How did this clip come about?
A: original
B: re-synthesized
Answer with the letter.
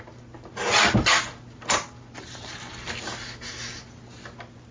A